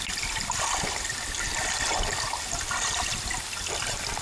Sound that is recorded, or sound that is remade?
recorded